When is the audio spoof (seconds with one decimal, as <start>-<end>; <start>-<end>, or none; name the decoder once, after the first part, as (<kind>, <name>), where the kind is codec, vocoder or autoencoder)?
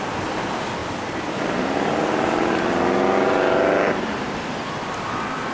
none